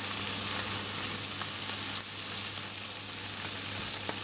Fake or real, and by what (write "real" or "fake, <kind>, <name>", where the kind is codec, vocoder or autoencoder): real